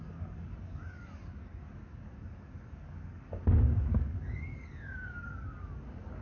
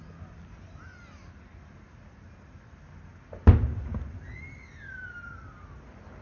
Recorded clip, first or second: second